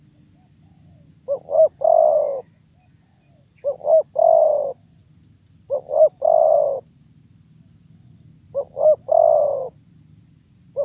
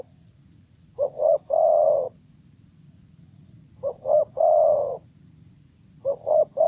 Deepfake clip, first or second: second